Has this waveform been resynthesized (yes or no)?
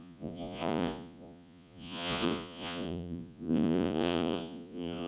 yes